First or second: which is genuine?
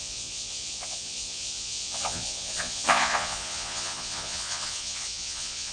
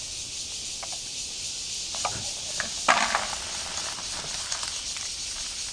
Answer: second